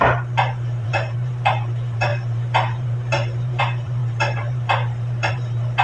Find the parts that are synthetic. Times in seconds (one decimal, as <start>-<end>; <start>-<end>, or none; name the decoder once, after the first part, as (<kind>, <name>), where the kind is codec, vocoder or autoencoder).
0.0-5.8 (vocoder, BigVGAN v2)

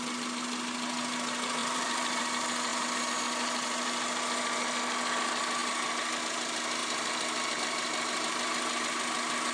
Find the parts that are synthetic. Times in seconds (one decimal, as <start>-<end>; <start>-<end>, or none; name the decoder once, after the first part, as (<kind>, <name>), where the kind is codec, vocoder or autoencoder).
1.6-2.2 (vocoder, BigVGAN v2)